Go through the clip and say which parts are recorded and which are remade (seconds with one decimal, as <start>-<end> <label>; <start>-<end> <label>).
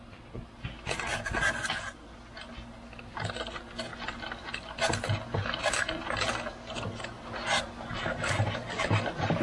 0.0-9.4 recorded